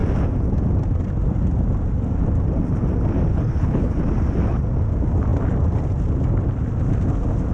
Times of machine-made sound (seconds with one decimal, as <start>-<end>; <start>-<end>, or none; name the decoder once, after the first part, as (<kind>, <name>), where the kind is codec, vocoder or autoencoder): 3.3-3.9 (codec, HILCodec)